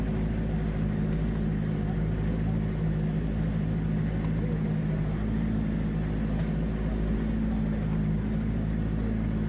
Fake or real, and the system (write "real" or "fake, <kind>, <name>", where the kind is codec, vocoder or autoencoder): real